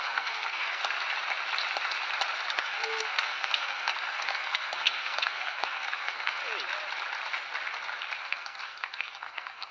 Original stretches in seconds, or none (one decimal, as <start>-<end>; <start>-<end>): 0.8-2.5; 6.4-8.2